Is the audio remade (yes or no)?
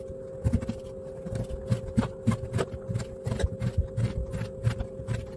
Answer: no